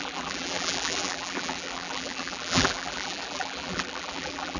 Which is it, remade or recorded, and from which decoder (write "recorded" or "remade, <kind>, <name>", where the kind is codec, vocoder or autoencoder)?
remade, vocoder, BigVGAN v2